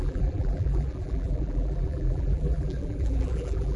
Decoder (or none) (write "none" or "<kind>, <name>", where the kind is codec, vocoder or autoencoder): vocoder, BigVGAN v2